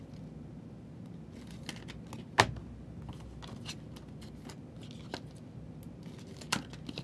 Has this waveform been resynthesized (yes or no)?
no